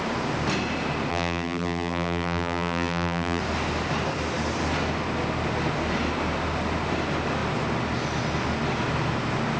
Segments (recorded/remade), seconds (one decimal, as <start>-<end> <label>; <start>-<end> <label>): 0.0-1.1 recorded; 1.1-3.4 remade; 3.4-9.6 recorded